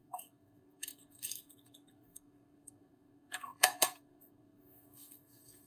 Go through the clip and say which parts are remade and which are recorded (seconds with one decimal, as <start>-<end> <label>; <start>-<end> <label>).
0.0-5.7 remade